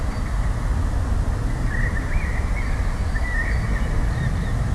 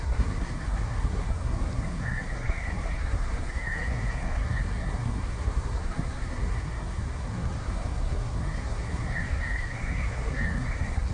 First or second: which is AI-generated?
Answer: second